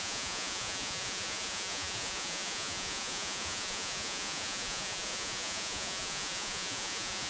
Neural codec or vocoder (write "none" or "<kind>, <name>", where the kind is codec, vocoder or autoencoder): vocoder, Vocos